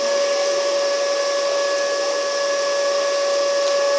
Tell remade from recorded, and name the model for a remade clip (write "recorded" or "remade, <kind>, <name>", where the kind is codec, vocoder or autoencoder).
recorded